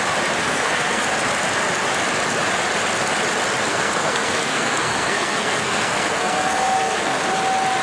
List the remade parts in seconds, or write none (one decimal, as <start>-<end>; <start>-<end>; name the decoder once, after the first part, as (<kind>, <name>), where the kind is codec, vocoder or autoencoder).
0.4-1.0 (codec, SNAC); 3.7-7.2